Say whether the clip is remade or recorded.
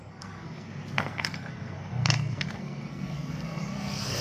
remade